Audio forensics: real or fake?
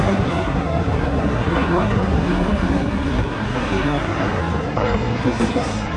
fake